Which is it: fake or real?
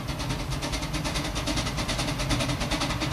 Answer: fake